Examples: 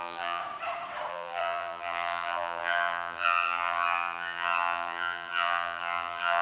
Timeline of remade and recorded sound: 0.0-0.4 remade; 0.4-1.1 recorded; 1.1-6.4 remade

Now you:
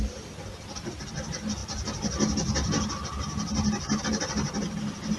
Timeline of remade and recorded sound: 0.0-5.2 recorded

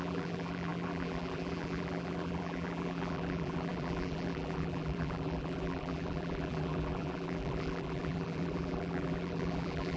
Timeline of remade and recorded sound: 0.0-10.0 remade

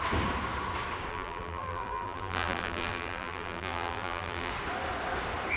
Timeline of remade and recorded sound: 0.0-1.1 recorded; 1.1-4.5 remade; 4.5-5.6 recorded

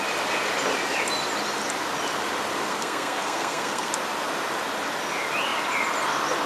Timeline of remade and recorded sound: 0.0-2.7 recorded; 2.7-3.9 remade; 3.9-6.5 recorded

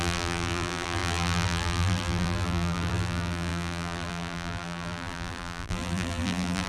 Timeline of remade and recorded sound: 0.0-6.7 remade

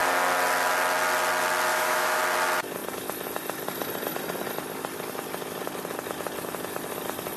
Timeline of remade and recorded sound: 0.0-1.7 recorded; 1.7-2.2 remade; 2.2-7.4 recorded